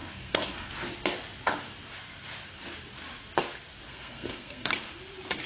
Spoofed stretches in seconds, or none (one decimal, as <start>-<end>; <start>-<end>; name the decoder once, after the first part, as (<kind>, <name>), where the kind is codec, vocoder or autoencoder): 0.0-0.7 (codec, SNAC); 3.9-4.7